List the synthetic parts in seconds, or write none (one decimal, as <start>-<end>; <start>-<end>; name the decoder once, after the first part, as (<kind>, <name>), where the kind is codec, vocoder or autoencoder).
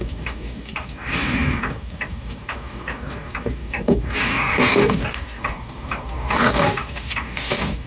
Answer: 0.0-7.9 (codec, DAC)